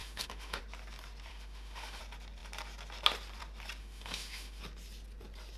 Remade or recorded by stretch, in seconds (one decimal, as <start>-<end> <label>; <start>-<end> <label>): 0.0-0.6 remade; 0.6-1.3 recorded; 1.3-2.0 remade; 2.0-3.8 recorded; 3.8-4.6 remade; 4.6-5.6 recorded